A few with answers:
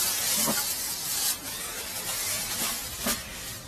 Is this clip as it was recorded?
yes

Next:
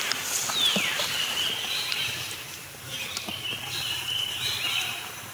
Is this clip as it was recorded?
yes